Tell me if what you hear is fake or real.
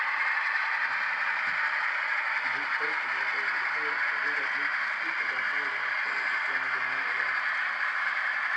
real